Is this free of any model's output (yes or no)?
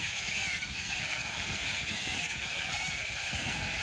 no